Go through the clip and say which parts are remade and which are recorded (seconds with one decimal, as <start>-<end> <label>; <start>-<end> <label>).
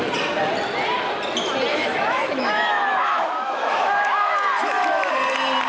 0.0-1.7 recorded; 1.7-5.1 remade; 5.1-5.7 recorded